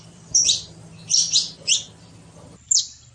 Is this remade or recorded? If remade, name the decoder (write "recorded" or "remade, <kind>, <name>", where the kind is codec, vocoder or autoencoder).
remade, vocoder, BigVGAN v2